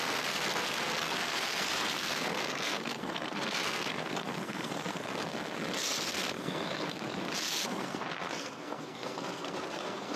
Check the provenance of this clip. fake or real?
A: fake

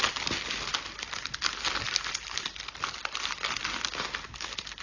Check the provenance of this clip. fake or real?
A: real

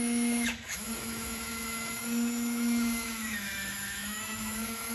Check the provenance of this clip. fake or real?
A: fake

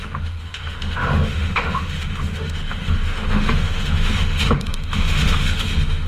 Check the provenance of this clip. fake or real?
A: fake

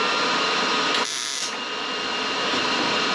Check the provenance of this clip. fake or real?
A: real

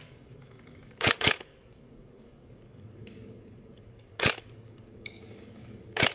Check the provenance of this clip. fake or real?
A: fake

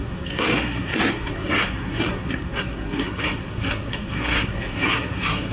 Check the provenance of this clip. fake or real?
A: fake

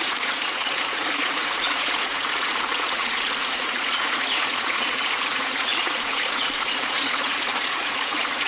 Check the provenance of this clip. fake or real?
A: fake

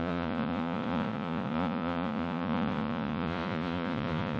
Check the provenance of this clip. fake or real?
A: fake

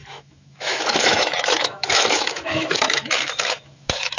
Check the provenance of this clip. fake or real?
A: fake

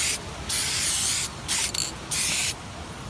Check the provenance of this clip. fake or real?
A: real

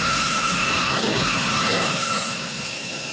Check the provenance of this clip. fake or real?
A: fake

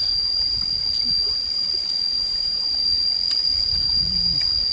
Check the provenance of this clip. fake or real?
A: real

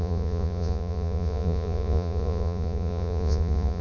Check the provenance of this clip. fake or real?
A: fake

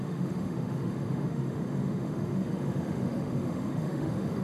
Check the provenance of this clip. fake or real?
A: fake